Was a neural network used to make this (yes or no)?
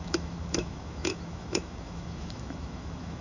yes